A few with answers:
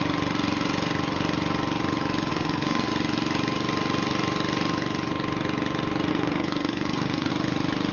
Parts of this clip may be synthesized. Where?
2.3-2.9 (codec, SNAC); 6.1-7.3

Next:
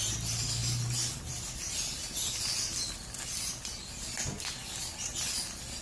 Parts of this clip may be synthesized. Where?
none

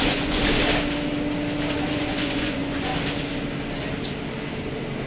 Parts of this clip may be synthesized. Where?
0.0-0.4 (vocoder, Vocos); 1.9-2.9

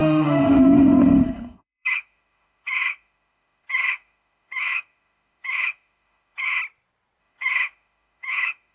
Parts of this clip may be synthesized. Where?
0.0-6.6 (autoencoder, DAC-VAE); 7.2-8.7

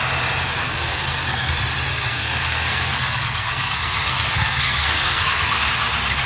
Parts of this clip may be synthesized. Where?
0.6-1.5 (codec, SNAC); 1.9-5.7